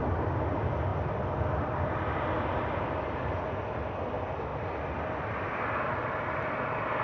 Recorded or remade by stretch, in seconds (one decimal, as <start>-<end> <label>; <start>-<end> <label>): 0.0-7.0 recorded